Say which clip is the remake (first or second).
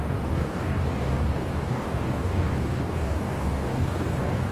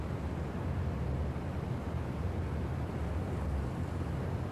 first